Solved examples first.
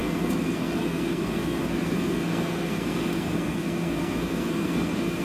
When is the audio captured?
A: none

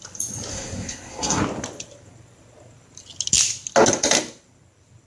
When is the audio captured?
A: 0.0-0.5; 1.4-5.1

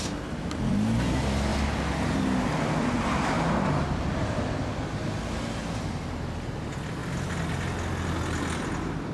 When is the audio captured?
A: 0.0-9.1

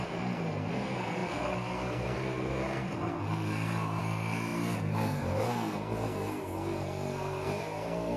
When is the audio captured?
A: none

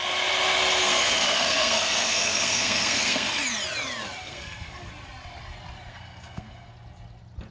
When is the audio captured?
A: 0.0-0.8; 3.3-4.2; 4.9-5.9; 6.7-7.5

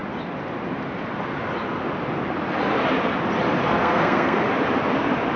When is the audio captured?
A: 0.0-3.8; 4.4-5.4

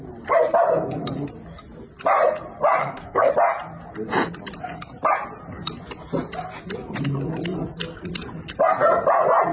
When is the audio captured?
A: 0.0-2.8; 3.3-9.5

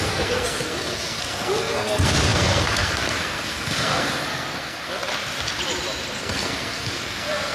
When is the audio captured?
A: 5.0-6.2